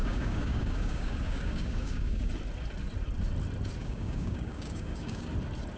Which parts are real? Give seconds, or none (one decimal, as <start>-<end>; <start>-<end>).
2.3-3.8; 5.3-5.8